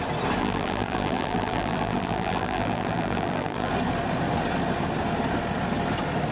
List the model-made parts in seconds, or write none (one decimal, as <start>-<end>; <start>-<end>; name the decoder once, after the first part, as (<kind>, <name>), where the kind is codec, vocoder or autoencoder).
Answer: 0.4-3.7 (vocoder, BigVGAN v2)